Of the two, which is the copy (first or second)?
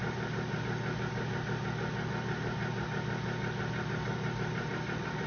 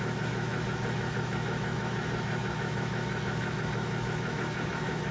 second